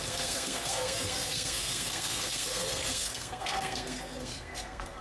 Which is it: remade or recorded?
remade